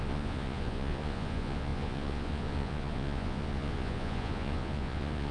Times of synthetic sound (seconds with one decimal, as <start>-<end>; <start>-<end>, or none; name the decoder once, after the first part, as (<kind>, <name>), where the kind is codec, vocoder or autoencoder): 0.0-5.3 (vocoder, Vocos)